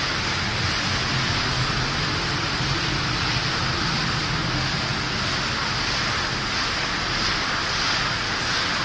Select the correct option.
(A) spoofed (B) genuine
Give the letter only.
B